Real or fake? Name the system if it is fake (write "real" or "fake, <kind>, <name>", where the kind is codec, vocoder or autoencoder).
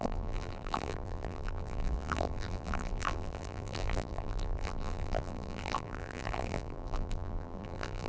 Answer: fake, vocoder, BigVGAN v2